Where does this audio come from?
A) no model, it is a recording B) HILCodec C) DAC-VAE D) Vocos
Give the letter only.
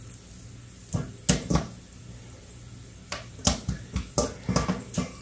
A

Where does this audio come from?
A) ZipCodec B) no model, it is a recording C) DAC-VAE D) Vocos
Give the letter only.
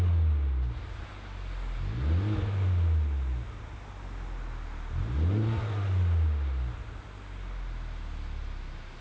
B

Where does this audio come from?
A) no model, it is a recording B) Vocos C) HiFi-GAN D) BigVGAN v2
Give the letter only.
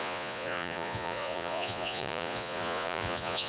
B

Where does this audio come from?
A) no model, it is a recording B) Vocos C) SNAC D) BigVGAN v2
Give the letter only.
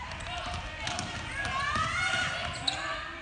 A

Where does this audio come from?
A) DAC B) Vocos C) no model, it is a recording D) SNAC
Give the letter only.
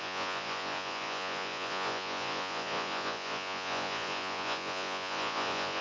B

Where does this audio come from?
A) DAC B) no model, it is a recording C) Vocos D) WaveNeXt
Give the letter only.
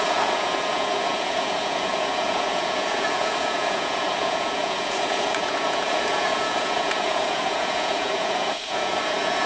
C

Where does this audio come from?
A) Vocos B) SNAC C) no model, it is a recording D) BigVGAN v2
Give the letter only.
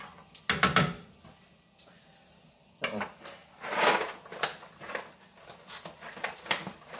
C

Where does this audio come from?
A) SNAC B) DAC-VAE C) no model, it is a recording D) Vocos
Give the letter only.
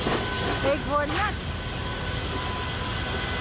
C